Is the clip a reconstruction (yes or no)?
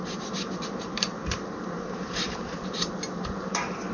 yes